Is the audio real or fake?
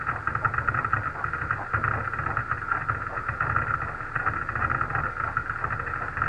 real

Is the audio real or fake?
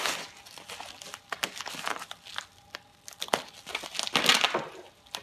real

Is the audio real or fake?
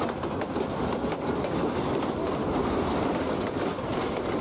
real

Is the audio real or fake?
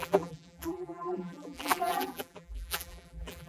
fake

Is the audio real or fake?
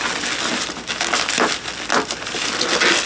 real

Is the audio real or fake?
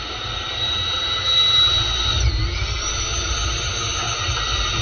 real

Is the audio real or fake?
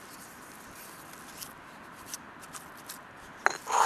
real